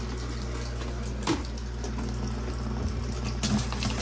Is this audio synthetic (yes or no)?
no